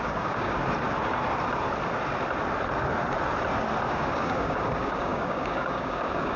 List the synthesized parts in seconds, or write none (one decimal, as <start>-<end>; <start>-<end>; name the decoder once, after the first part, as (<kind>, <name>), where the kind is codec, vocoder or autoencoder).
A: 0.0-0.6 (codec, DAC); 3.9-6.4